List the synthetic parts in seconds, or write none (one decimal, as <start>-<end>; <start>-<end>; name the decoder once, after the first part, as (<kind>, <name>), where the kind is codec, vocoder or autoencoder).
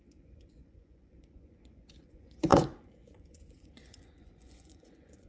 0.0-5.3 (vocoder, Vocos)